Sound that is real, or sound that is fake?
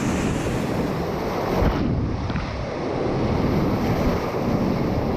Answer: real